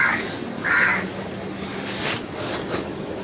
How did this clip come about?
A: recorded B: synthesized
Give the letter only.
B